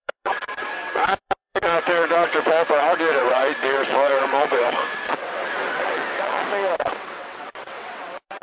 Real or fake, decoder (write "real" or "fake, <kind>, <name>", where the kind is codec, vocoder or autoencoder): fake, vocoder, WaveNeXt